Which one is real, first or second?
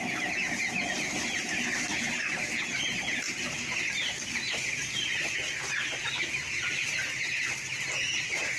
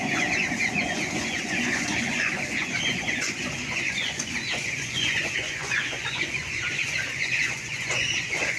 first